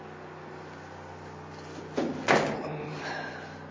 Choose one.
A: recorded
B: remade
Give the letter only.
A